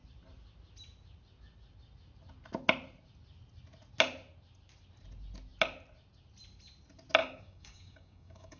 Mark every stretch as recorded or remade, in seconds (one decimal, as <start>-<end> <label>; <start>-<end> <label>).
0.0-7.2 recorded; 7.2-8.6 remade